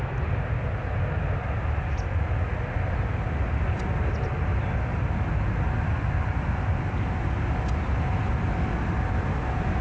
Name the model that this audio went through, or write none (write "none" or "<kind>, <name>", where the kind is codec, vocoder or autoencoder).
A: none